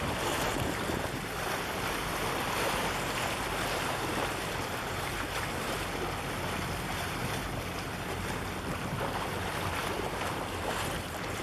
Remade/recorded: remade